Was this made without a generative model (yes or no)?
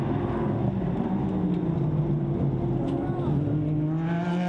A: yes